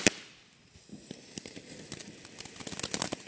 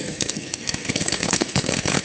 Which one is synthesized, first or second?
second